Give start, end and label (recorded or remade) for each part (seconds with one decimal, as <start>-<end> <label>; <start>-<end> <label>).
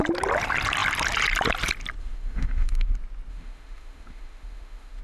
0.0-2.0 recorded; 2.0-2.9 remade; 2.9-3.3 recorded; 3.3-5.0 remade